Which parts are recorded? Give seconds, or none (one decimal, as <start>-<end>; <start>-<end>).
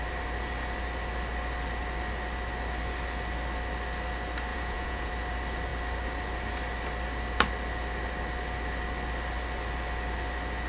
0.0-4.5; 5.1-10.7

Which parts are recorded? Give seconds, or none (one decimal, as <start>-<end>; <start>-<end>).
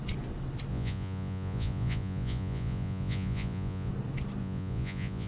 0.0-0.7; 3.9-4.4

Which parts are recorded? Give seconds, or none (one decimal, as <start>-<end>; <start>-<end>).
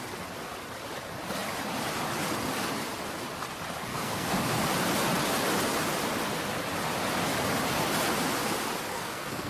0.0-3.9; 4.4-8.9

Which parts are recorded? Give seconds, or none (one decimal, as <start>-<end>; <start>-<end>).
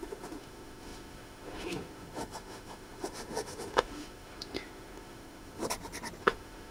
5.6-6.2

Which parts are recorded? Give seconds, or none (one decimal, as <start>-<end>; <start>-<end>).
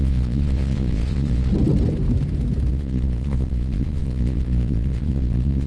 1.5-2.7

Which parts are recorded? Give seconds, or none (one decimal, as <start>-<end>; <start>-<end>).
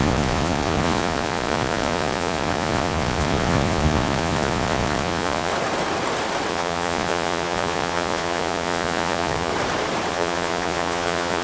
5.5-6.5; 9.5-10.1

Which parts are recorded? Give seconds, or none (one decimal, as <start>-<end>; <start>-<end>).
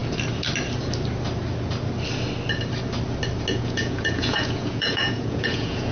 0.0-3.5